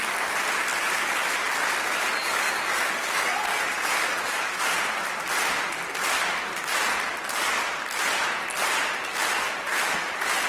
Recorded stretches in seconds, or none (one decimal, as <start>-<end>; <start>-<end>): 0.0-2.2; 3.6-4.0; 4.6-10.5